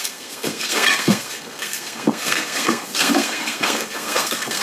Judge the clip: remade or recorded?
remade